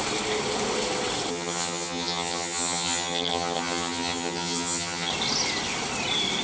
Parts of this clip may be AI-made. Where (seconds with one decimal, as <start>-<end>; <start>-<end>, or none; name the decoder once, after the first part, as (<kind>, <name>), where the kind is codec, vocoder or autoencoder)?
1.3-5.1 (vocoder, HiFi-GAN)